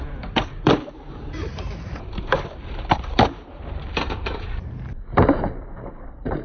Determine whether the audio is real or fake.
fake